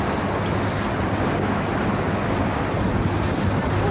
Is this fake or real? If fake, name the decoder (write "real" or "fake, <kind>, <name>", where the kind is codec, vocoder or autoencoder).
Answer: real